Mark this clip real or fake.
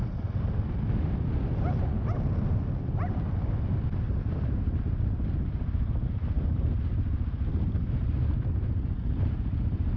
real